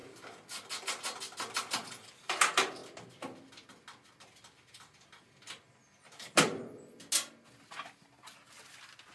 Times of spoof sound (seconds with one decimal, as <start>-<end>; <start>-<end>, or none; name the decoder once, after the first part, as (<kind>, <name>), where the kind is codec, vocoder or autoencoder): none